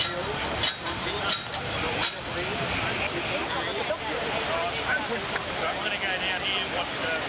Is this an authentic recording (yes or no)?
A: yes